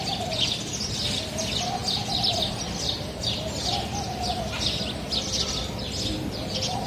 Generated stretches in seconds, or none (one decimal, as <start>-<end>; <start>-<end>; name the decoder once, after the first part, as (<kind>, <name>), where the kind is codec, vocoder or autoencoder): none